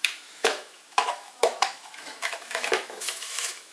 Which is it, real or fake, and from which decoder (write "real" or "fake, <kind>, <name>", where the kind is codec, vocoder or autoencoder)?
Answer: fake, autoencoder, DAC-VAE